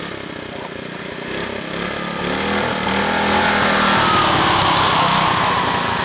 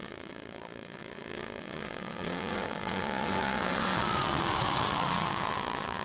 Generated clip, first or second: second